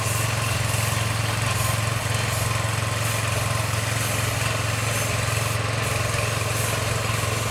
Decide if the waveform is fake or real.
real